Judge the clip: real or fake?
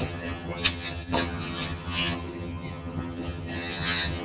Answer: fake